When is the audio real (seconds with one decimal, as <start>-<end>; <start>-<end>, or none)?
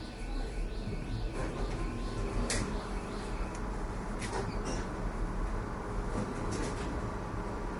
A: 0.0-7.8